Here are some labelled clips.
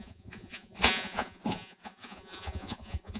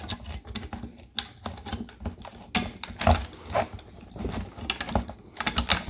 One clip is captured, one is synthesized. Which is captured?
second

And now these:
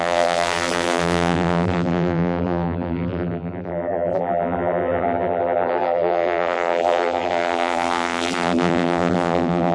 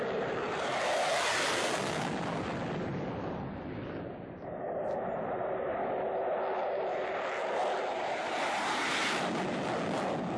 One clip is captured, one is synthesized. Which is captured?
second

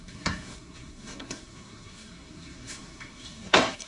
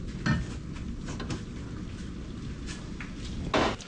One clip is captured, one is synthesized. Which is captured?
second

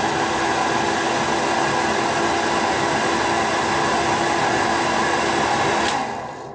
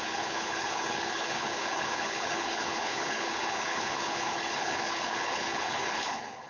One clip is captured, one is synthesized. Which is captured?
first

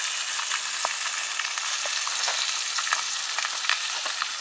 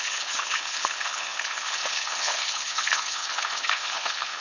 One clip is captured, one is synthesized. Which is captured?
first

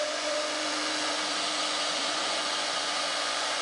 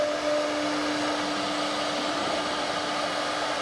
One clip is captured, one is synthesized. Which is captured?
second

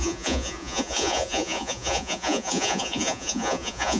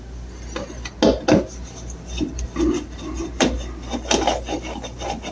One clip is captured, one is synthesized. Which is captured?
second